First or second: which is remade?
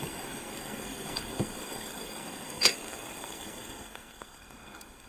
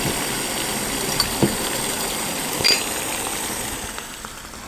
first